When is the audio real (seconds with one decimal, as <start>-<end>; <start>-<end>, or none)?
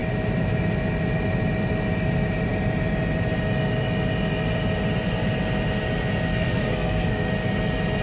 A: 0.0-6.3; 7.3-8.0